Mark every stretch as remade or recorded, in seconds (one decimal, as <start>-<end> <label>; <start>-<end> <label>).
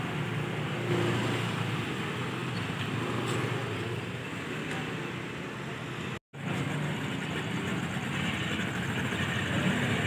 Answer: 0.0-10.1 recorded